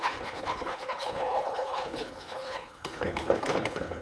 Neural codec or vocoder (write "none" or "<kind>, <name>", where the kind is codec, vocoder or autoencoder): codec, HILCodec